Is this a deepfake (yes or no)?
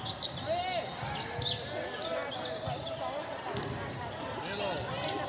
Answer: no